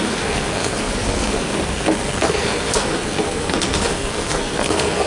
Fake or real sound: fake